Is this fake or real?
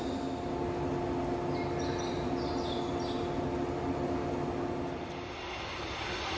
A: real